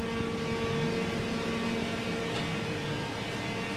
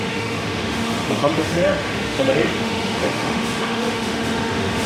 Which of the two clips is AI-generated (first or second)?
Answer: second